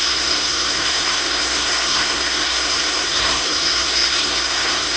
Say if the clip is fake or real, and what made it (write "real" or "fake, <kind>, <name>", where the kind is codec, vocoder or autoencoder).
fake, codec, SNAC